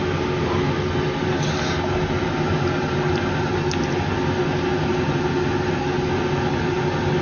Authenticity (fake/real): real